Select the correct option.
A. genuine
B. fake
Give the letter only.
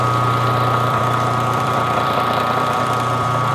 B